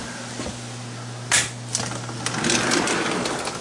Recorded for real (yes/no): yes